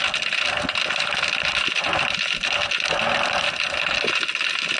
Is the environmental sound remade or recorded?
recorded